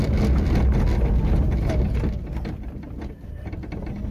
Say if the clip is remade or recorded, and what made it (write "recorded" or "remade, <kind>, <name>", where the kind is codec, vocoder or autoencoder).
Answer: recorded